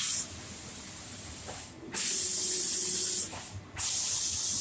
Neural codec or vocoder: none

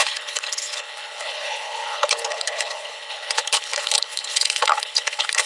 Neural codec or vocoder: codec, HILCodec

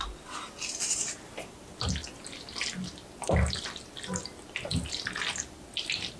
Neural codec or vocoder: none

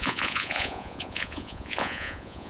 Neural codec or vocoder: vocoder, Vocos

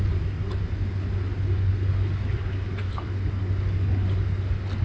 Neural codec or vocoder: none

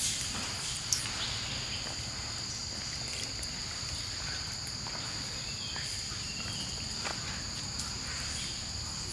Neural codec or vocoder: none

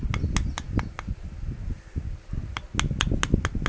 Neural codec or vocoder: none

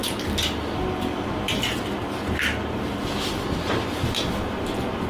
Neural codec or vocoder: none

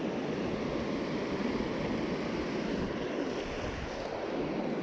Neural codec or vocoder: none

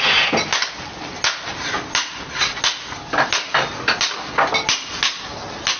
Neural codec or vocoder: none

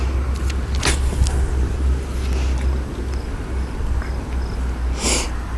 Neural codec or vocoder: none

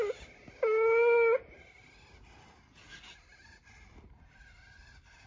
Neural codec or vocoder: none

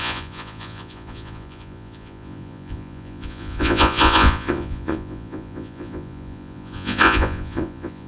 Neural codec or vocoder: vocoder, Vocos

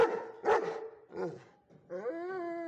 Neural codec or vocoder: none